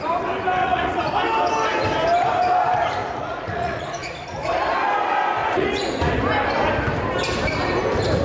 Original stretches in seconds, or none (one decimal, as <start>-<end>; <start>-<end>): 0.0-0.6; 1.1-3.0; 4.2-5.4; 6.1-8.2